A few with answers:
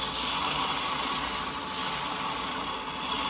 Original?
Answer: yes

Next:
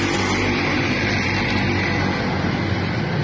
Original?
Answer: yes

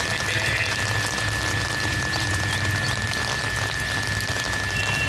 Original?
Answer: yes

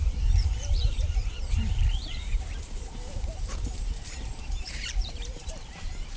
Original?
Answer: no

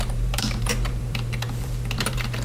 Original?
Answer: no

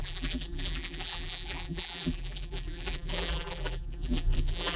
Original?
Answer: no